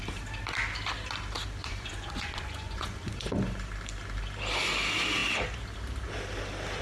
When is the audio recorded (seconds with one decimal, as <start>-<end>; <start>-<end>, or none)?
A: 0.0-1.6; 3.4-6.8